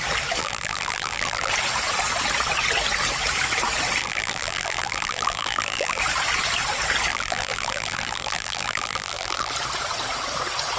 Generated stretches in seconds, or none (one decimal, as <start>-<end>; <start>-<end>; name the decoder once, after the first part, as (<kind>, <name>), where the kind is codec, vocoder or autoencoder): 0.4-1.5 (vocoder, BigVGAN v2); 4.0-6.0; 7.1-9.5